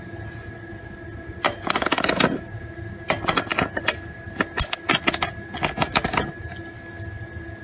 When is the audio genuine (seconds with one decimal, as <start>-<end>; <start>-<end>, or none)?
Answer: 0.0-7.6